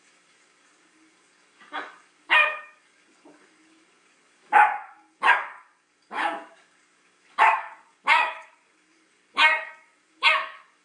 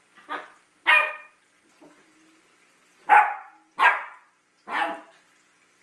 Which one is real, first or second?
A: second